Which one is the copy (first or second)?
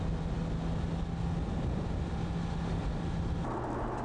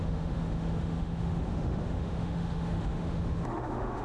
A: second